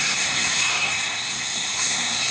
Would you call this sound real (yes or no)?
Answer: no